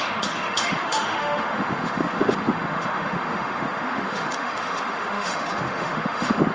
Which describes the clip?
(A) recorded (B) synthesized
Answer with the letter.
B